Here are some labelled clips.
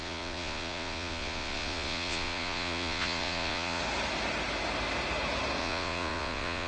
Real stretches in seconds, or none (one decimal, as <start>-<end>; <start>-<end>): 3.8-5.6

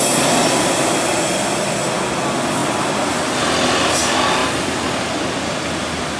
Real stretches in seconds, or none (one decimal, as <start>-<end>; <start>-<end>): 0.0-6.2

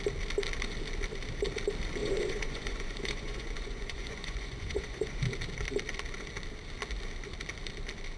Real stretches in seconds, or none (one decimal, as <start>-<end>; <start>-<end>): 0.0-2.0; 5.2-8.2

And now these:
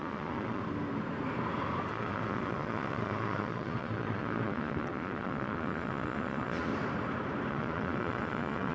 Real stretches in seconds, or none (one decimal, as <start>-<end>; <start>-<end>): 0.6-1.9; 6.7-7.5

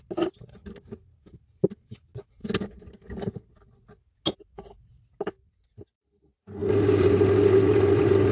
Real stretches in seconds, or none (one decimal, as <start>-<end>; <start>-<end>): 0.0-8.3